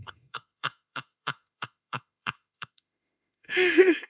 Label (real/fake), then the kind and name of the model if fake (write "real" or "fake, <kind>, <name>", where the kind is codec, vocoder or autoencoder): fake, autoencoder, DAC-VAE